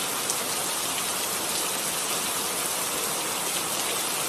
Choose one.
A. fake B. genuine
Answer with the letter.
B